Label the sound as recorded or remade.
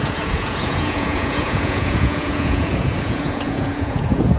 remade